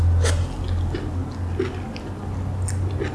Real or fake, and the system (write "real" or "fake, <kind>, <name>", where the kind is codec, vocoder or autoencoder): real